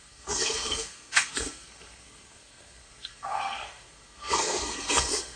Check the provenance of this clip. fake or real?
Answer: fake